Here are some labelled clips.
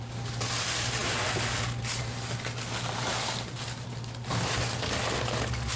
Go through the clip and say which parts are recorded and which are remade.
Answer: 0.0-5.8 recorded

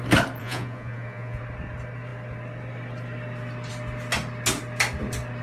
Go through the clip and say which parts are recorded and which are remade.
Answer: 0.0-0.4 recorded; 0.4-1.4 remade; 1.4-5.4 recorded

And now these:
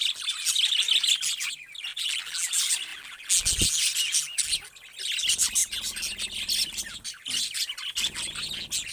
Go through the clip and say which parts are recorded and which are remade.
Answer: 0.0-1.9 recorded; 1.9-2.5 remade; 2.5-2.9 recorded; 2.9-3.5 remade; 3.5-8.9 recorded

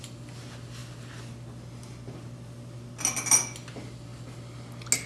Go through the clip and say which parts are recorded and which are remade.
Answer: 0.0-5.1 recorded

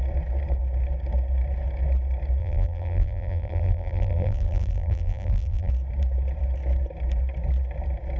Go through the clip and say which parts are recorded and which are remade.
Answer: 0.0-2.4 recorded; 2.4-5.7 remade; 5.7-8.2 recorded

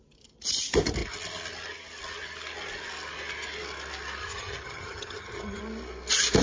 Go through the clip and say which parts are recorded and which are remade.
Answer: 0.0-4.2 recorded; 4.2-5.6 remade; 5.6-6.4 recorded

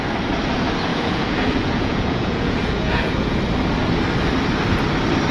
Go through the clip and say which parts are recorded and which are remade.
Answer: 0.0-0.9 recorded; 0.9-3.4 remade; 3.4-5.3 recorded

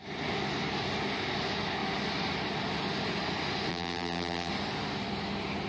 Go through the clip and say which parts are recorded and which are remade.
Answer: 0.0-3.7 recorded; 3.7-4.5 remade; 4.5-5.7 recorded